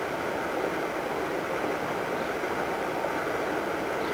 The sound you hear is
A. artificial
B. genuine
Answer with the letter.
B